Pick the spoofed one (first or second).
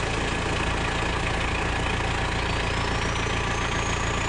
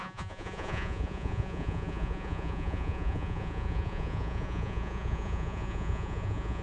second